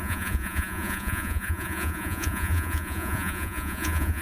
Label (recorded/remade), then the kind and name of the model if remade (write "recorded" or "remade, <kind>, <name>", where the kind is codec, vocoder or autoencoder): remade, vocoder, Vocos